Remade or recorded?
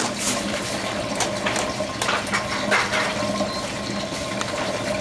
recorded